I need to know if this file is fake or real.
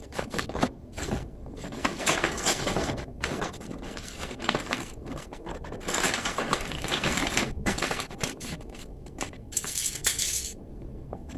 fake